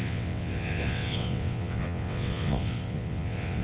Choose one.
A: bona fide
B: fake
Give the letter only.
B